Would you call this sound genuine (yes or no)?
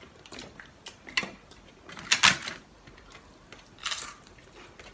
yes